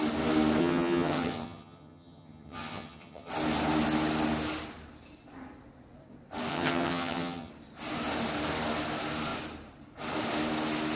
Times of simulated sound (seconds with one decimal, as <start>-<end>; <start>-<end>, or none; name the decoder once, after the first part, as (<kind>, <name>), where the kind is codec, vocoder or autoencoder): 0.6-3.3 (vocoder, HiFi-GAN); 6.5-7.5